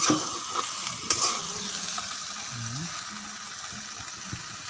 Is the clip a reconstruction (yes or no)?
no